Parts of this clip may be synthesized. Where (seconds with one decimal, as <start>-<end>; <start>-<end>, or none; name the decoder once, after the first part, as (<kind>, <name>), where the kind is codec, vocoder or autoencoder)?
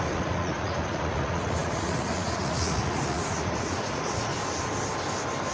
0.0-4.3 (vocoder, Vocos)